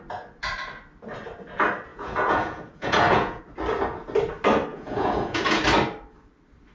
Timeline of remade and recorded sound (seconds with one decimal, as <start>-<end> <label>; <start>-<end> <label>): 0.0-1.9 recorded; 1.9-3.4 remade; 3.4-4.7 recorded; 4.7-5.6 remade; 5.6-6.7 recorded